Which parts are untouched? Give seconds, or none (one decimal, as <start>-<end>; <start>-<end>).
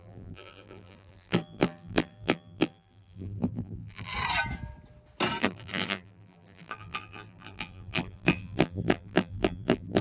4.1-5.4